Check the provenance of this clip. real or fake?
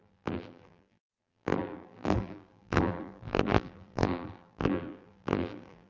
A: fake